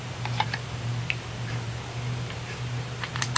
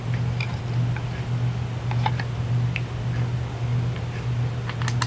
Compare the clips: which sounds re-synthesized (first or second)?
first